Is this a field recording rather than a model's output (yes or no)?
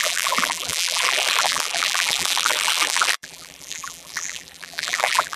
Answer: no